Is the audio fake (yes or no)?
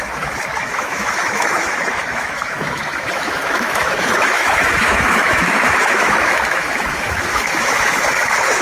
yes